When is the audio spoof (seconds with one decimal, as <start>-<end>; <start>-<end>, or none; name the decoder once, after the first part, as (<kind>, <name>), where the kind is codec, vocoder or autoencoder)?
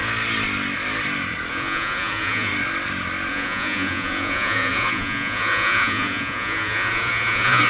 1.5-2.5 (vocoder, Vocos); 3.3-7.7